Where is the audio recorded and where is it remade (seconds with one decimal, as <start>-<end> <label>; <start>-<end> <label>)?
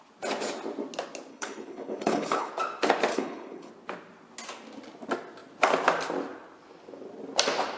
0.0-1.3 recorded; 1.3-2.5 remade; 2.5-3.1 recorded; 3.1-3.7 remade; 3.7-7.8 recorded